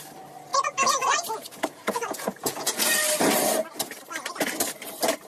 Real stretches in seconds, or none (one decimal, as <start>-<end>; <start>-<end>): 0.0-0.5; 2.8-5.3